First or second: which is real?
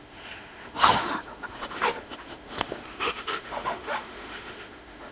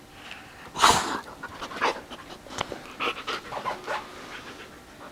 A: second